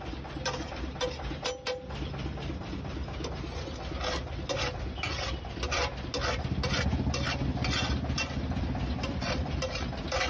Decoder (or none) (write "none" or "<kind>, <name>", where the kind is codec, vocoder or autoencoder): none